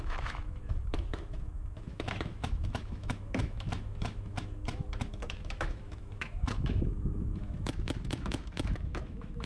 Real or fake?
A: fake